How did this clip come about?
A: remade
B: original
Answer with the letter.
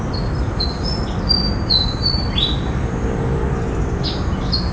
B